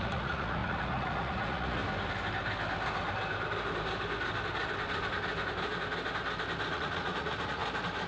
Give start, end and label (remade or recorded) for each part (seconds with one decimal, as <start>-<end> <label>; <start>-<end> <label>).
0.0-1.8 remade; 1.8-6.7 recorded; 6.7-7.6 remade; 7.6-8.1 recorded